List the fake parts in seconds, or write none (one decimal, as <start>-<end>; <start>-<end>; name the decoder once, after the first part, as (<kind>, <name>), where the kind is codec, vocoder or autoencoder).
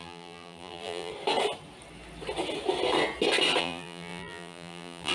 0.0-1.1 (vocoder, BigVGAN v2); 3.6-5.1